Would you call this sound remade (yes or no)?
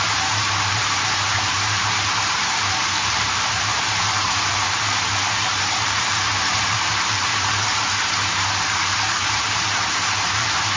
yes